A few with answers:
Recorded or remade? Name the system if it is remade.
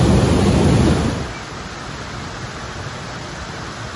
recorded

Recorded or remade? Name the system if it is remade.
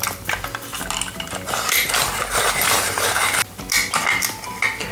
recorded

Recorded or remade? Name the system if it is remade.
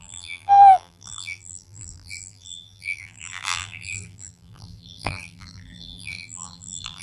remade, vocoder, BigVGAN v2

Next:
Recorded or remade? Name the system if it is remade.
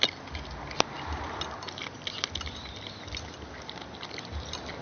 recorded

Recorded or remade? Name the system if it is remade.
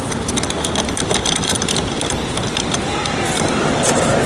remade, vocoder, BigVGAN v2